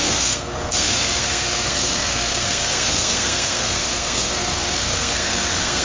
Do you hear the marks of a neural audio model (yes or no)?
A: yes